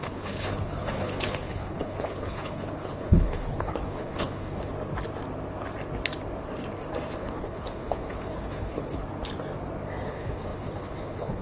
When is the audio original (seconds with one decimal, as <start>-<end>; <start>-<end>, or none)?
4.7-7.2; 9.0-10.1